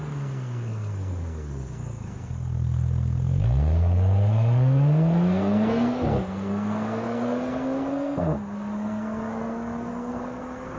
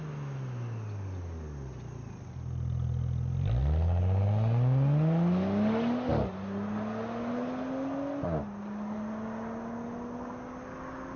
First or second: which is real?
second